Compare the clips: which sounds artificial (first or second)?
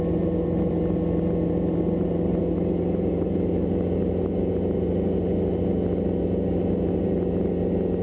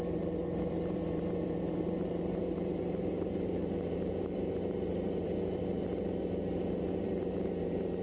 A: second